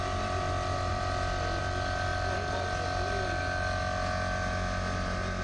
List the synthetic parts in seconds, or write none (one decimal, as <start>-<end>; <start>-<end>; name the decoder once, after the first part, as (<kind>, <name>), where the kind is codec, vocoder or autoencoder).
0.9-1.6 (vocoder, BigVGAN v2)